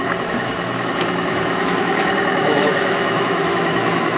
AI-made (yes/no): yes